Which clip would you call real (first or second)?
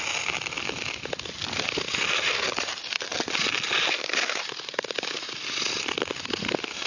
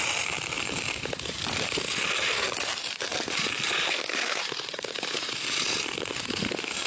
first